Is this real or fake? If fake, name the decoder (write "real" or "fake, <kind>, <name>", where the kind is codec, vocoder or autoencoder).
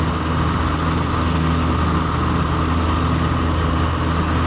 real